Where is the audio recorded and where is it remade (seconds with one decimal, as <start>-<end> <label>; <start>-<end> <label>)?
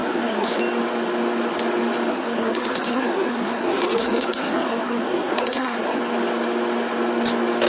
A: 0.0-0.6 remade; 0.6-2.1 recorded; 2.1-6.0 remade; 6.0-7.7 recorded